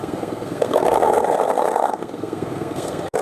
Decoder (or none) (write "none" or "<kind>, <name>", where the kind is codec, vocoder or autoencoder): codec, SNAC